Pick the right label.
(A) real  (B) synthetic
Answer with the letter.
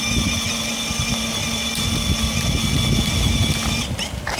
A